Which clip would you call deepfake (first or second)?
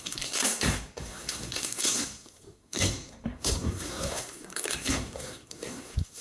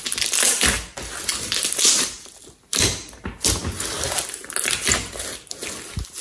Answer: first